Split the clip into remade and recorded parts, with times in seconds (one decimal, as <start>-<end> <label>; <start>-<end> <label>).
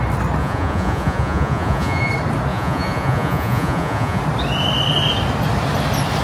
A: 0.0-0.4 recorded; 0.4-2.1 remade; 2.1-2.5 recorded; 2.5-4.2 remade; 4.2-6.2 recorded